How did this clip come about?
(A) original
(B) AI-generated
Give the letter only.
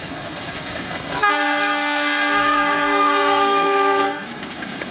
B